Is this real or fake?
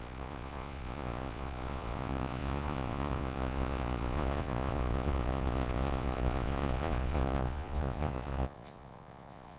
fake